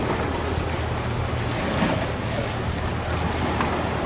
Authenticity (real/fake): real